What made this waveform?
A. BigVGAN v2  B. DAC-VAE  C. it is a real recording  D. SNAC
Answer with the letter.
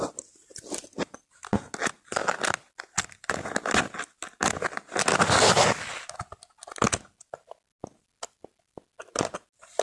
C